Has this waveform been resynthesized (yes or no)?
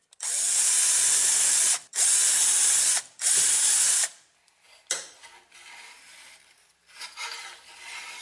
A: no